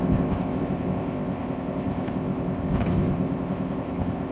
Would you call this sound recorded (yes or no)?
no